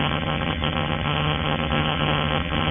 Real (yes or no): no